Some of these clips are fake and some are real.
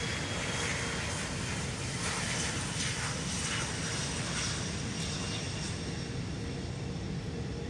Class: real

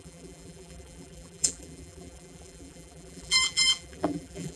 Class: fake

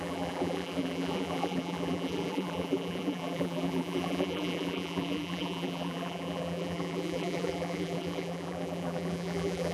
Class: fake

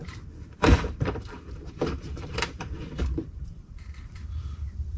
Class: fake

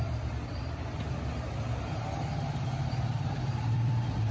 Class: fake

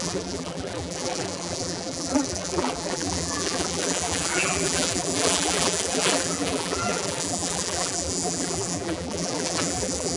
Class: fake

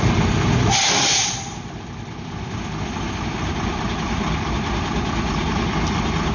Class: fake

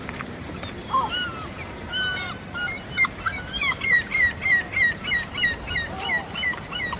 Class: fake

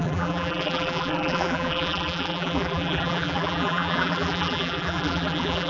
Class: fake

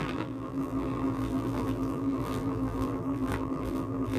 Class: fake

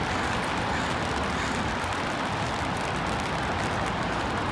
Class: real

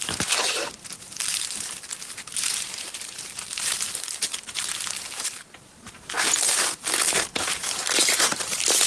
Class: fake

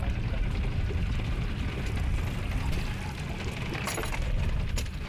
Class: real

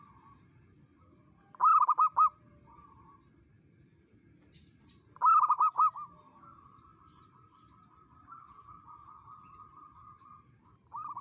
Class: real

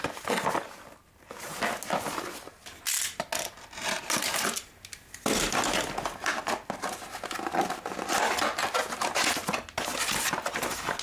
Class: real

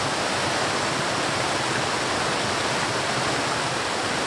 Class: real